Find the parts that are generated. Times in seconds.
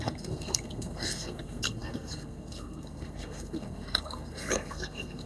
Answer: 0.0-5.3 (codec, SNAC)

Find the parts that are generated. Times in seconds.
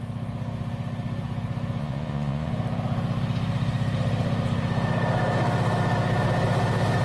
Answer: 1.8-2.5 (vocoder, Vocos)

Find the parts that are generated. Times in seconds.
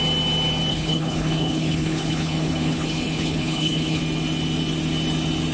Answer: 0.7-4.0 (codec, HILCodec)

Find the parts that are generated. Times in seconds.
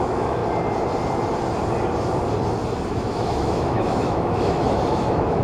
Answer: 0.0-0.4 (autoencoder, DAC-VAE); 2.9-5.4